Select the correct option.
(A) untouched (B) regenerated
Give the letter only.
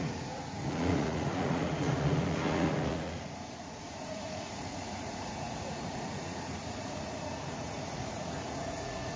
B